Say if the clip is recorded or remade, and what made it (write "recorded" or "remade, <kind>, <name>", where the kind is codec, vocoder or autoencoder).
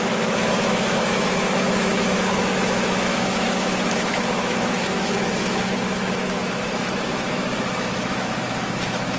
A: remade, autoencoder, DAC-VAE